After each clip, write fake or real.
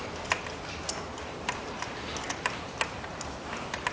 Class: real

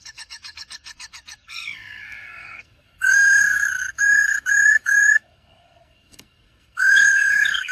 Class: fake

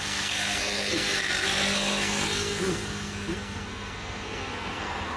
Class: fake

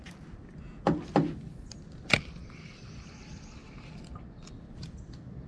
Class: real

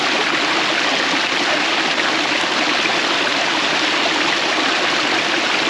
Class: real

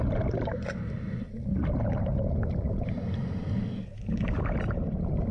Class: real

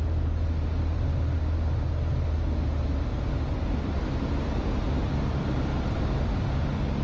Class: real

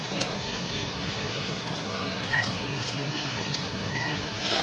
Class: fake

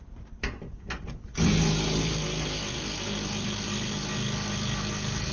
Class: real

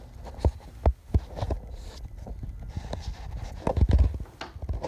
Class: real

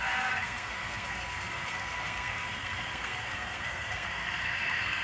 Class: fake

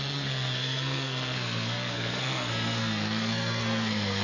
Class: fake